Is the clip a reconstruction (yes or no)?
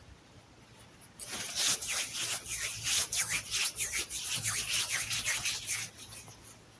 no